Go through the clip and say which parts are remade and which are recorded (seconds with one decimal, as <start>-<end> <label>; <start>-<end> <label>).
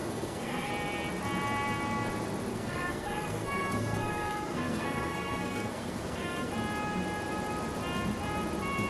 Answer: 0.0-0.7 remade; 0.7-2.5 recorded; 2.5-6.5 remade; 6.5-8.9 recorded